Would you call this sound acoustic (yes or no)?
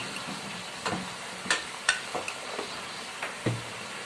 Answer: yes